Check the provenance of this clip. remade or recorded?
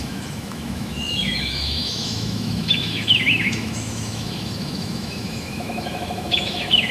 remade